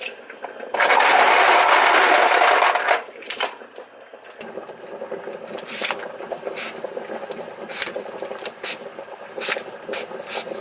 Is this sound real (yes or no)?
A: yes